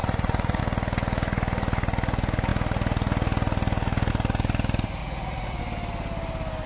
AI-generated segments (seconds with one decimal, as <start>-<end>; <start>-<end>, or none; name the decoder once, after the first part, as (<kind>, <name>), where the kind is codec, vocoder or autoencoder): 0.0-0.6 (vocoder, Vocos); 5.0-5.6